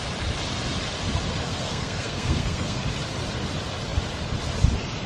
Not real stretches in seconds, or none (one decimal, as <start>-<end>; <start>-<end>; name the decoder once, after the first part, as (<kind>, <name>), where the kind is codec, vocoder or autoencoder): 1.4-2.8 (codec, SNAC)